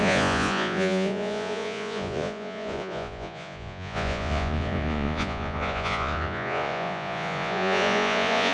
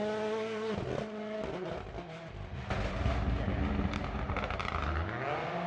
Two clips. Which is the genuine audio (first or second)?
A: second